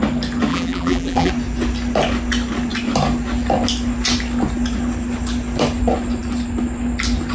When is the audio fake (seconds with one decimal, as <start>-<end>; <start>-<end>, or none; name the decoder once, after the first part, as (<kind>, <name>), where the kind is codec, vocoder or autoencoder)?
0.5-1.3 (vocoder, BigVGAN v2)